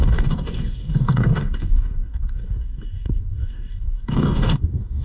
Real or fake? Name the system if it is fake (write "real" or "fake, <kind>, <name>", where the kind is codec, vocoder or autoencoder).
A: fake, codec, DAC